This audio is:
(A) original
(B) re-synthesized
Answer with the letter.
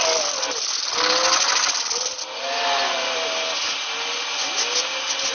A